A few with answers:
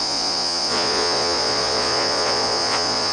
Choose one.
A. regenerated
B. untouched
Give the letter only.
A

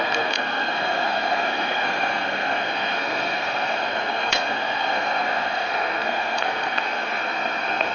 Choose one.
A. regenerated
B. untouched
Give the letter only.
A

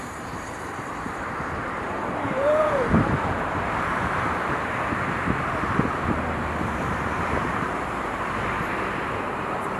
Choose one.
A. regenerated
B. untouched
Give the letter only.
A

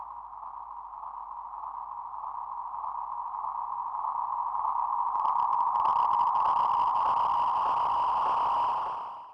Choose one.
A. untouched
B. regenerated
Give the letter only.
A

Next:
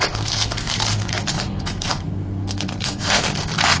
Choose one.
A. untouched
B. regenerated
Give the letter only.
B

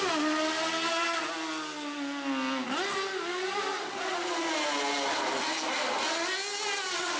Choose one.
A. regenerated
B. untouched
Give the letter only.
B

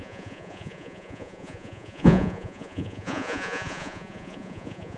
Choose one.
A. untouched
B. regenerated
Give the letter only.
B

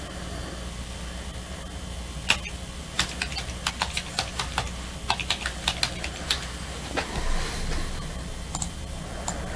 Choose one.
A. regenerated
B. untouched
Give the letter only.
B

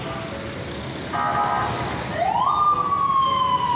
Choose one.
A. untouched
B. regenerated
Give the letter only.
A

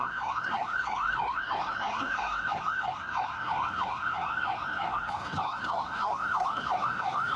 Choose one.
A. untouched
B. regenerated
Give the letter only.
B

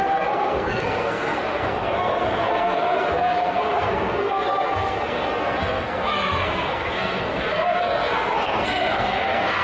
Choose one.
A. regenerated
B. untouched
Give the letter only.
A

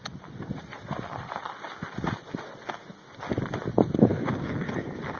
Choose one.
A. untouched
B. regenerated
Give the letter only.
A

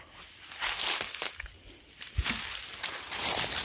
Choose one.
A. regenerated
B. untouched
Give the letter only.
B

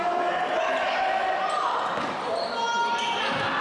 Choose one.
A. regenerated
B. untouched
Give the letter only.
B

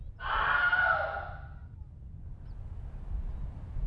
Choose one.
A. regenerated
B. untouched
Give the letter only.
B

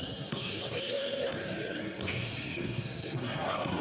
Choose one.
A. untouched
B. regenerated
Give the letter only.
B